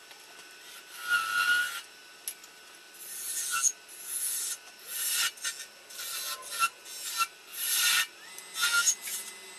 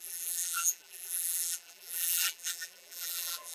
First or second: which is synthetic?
second